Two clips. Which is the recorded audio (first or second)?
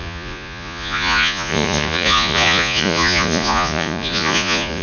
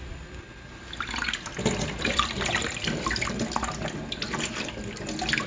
second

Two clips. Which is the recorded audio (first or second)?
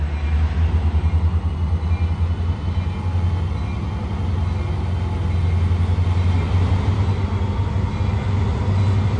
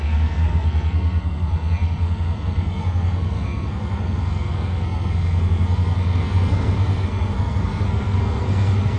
first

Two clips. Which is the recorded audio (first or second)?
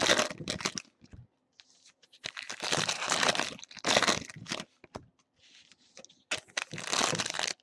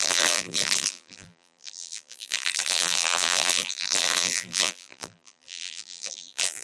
first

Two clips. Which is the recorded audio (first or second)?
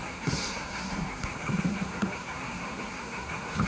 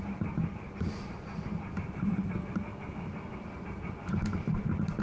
second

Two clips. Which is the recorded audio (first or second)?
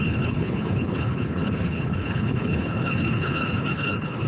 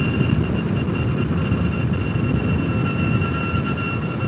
second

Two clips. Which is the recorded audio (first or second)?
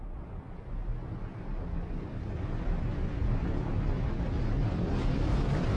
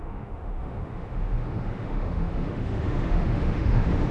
first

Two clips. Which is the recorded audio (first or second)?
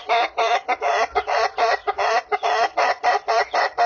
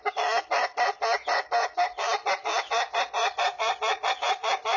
second